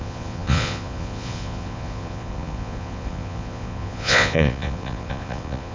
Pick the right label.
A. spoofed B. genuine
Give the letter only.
A